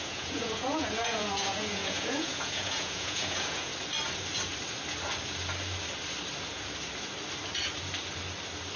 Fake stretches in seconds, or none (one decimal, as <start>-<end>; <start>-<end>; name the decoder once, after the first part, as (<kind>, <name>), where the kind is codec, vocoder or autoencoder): 0.0-3.7 (vocoder, Vocos)